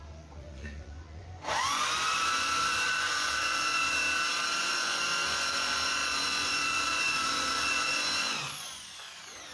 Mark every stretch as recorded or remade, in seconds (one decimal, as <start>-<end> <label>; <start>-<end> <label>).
0.0-4.0 remade; 4.0-4.6 recorded; 4.6-9.5 remade